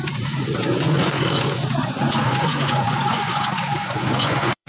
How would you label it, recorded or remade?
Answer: remade